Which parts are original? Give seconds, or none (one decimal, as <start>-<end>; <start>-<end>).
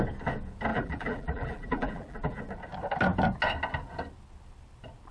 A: 0.0-0.7; 2.4-5.1